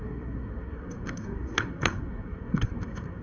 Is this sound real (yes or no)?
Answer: no